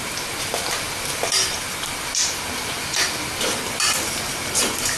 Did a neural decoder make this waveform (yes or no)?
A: yes